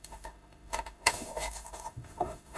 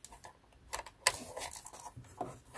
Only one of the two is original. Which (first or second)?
second